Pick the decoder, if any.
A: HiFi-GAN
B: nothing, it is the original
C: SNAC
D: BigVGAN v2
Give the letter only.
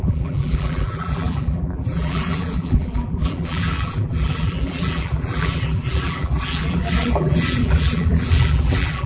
D